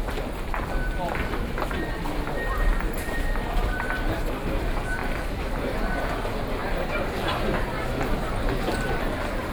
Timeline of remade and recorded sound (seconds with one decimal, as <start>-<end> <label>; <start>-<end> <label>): 0.0-6.6 recorded; 6.6-7.1 remade; 7.1-9.5 recorded